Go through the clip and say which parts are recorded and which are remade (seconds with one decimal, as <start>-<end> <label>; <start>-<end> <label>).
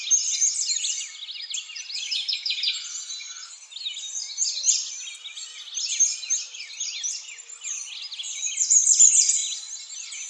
0.0-10.3 recorded